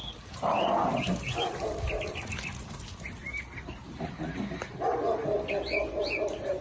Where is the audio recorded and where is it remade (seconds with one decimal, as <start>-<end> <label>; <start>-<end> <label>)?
0.0-6.6 recorded